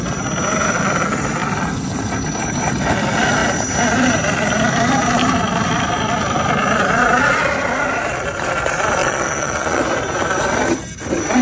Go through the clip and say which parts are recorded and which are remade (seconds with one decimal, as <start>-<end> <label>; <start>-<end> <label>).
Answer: 0.0-9.0 recorded; 9.0-9.8 remade; 9.8-11.4 recorded